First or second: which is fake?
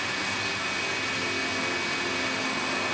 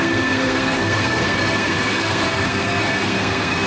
second